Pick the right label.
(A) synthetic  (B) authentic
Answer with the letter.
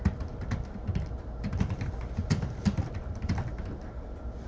B